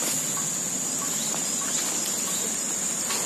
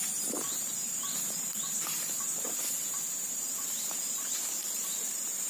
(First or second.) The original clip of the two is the first